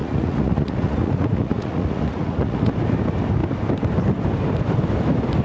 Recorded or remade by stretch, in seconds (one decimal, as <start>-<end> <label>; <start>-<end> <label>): 0.0-2.7 remade; 2.7-5.4 recorded